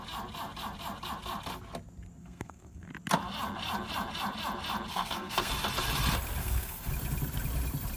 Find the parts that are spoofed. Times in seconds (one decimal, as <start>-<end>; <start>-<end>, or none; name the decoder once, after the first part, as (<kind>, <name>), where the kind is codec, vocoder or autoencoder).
2.2-2.9 (codec, SNAC); 4.9-5.5; 6.4-6.9